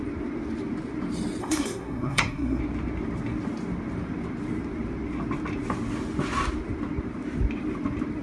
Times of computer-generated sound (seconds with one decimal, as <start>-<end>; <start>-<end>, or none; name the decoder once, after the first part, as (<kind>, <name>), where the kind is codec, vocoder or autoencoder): 1.4-2.6 (codec, SNAC)